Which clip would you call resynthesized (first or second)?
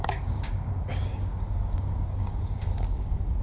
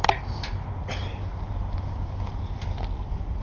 first